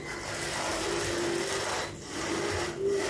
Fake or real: real